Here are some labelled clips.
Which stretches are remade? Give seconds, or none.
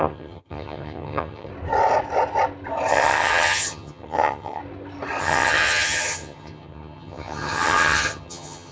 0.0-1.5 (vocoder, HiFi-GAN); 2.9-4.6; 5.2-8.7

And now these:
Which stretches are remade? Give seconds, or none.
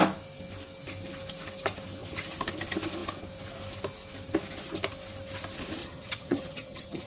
5.8-7.1 (vocoder, HiFi-GAN)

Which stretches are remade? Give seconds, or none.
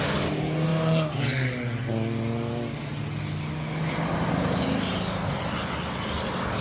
none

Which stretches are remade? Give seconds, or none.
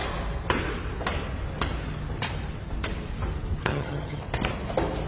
3.6-4.2 (vocoder, HiFi-GAN)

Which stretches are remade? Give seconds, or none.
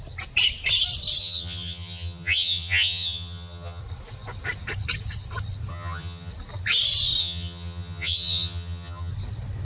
1.2-3.8 (vocoder, HiFi-GAN); 5.7-6.3; 7.2-9.1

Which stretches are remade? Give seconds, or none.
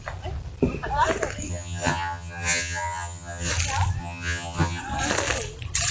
1.5-3.5 (vocoder, HiFi-GAN); 4.0-4.8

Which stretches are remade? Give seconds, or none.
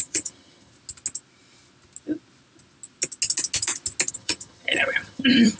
0.0-0.7 (vocoder, HiFi-GAN); 4.1-5.6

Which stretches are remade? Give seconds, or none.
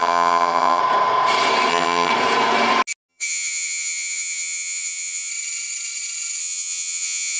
0.0-0.8 (vocoder, HiFi-GAN); 1.7-2.1; 3.1-5.3; 6.4-7.4